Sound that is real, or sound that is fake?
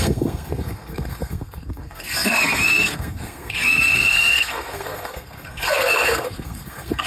fake